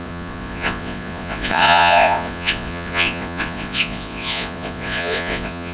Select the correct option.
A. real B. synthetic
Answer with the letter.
B